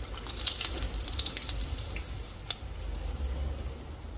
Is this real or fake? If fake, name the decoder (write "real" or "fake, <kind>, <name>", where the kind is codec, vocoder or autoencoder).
real